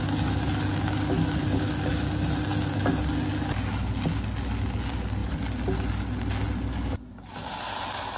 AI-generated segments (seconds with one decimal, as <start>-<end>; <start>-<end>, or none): none